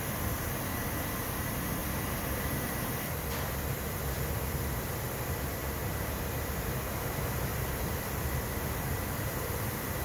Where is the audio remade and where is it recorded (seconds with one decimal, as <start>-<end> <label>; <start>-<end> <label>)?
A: 0.0-1.8 remade; 1.8-3.0 recorded; 3.0-5.6 remade; 5.6-7.7 recorded; 7.7-10.0 remade